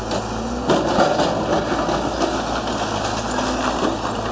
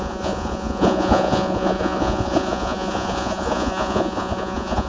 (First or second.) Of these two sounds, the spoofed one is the second